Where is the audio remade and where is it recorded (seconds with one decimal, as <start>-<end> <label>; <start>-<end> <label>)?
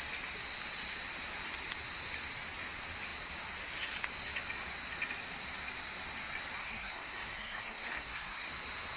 0.0-6.6 recorded; 6.6-8.5 remade; 8.5-9.0 recorded